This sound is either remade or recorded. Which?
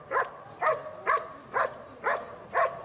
recorded